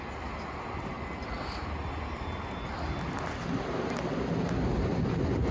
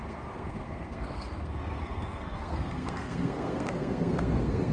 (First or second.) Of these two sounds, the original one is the first